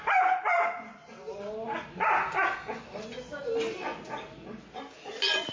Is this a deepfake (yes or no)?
no